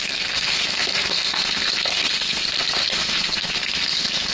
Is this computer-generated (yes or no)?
yes